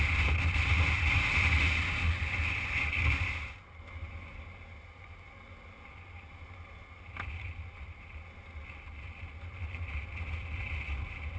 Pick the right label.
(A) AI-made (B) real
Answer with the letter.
B